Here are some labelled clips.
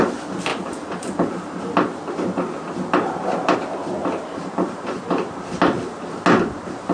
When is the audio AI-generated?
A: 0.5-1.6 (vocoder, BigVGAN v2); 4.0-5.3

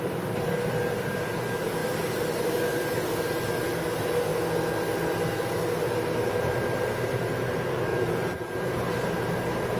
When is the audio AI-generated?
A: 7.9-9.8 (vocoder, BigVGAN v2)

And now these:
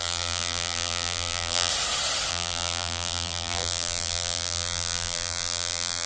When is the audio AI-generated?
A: 0.0-1.7 (vocoder, BigVGAN v2); 2.3-6.1

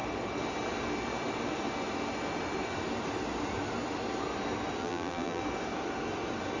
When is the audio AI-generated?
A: 4.8-5.4 (vocoder, BigVGAN v2)

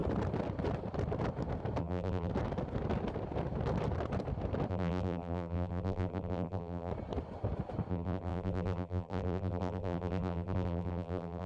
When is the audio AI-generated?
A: 1.8-2.3 (vocoder, BigVGAN v2); 4.7-6.9; 7.9-11.5

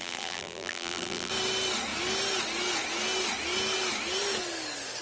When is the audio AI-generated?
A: 0.0-1.3 (vocoder, BigVGAN v2)

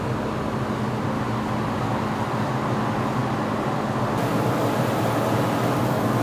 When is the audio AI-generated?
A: none